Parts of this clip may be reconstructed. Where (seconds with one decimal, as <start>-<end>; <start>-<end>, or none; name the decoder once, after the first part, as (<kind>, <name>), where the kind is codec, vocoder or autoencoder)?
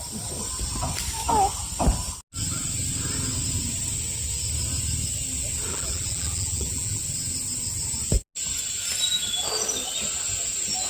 5.7-7.0 (vocoder, BigVGAN v2)